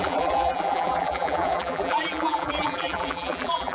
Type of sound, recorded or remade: remade